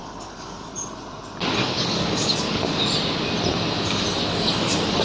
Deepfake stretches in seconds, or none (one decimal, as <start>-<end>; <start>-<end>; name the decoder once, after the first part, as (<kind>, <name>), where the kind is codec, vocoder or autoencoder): 0.0-0.7 (codec, DAC); 1.6-2.8; 4.3-5.0